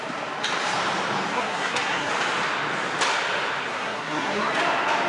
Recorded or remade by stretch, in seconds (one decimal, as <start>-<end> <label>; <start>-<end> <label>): 0.0-1.3 recorded; 1.3-2.1 remade; 2.1-3.7 recorded; 3.7-4.5 remade; 4.5-5.1 recorded